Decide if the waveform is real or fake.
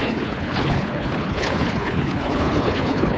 fake